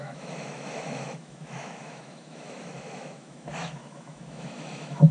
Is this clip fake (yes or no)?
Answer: yes